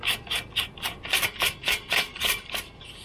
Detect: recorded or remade recorded